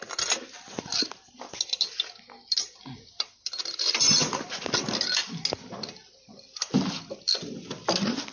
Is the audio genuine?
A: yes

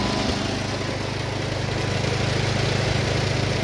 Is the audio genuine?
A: yes